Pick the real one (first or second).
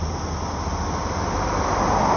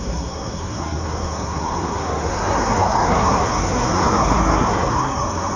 first